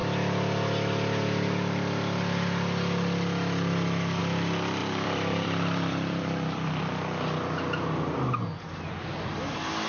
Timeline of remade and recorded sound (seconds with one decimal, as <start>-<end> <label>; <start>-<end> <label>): 0.0-4.8 recorded; 4.8-6.8 remade; 6.8-9.9 recorded